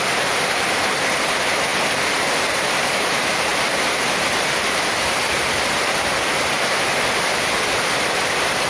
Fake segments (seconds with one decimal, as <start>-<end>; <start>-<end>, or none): 0.0-1.7; 3.0-3.5; 7.0-8.7